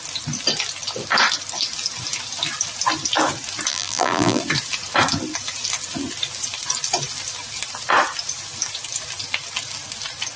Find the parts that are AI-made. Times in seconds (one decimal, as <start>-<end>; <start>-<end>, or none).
3.7-4.4